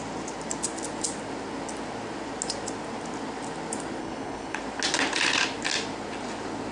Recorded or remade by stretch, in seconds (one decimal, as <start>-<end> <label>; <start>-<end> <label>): 0.0-4.0 recorded; 4.0-4.6 remade; 4.6-6.7 recorded